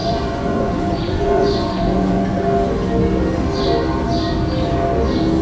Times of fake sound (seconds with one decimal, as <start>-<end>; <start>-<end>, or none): 0.0-2.4

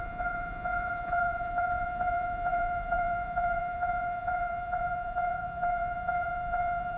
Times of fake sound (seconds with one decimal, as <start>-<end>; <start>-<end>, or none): 0.0-7.0